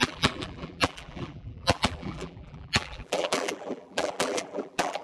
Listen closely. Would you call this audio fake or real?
fake